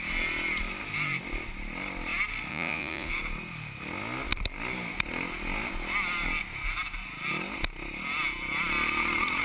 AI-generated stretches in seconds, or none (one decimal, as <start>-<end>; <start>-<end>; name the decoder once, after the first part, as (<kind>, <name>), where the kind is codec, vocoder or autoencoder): 2.5-3.1 (vocoder, Vocos)